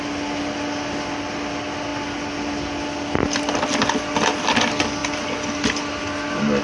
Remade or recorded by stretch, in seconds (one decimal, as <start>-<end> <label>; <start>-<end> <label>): 0.0-6.6 recorded